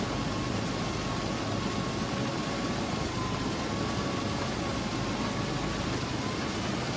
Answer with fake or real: real